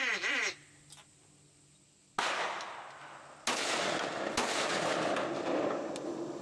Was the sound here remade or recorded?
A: recorded